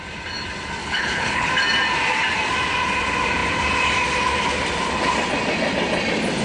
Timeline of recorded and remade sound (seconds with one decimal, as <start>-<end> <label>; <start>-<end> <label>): 0.0-0.8 recorded; 0.8-1.5 remade; 1.5-6.4 recorded